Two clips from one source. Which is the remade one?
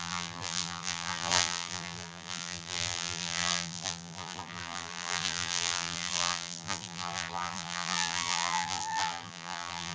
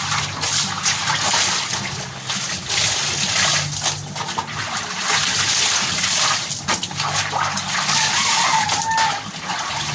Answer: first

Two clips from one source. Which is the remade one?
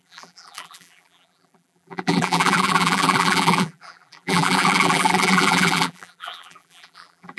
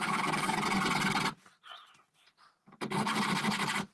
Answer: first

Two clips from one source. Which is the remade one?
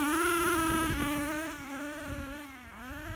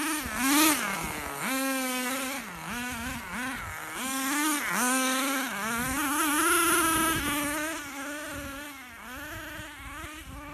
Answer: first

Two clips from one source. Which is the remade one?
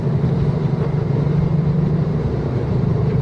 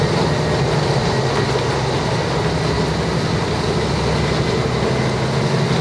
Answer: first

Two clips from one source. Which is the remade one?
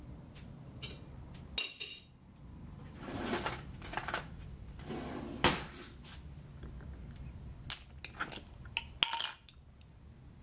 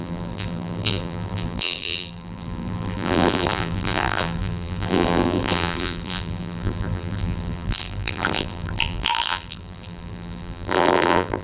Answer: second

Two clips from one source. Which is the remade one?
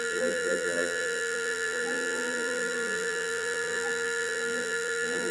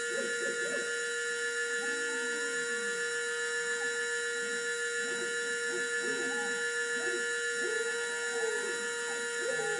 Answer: first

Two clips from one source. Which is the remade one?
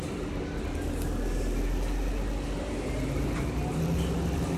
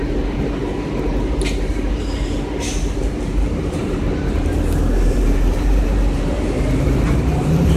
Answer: second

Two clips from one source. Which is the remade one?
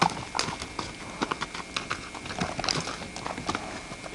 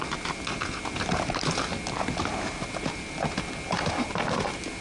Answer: second